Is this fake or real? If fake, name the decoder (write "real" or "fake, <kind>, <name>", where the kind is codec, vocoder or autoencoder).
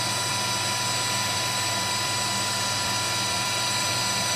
fake, vocoder, BigVGAN v2